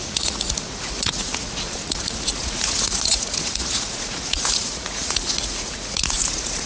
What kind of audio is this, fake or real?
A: fake